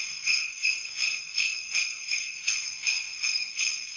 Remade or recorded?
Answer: remade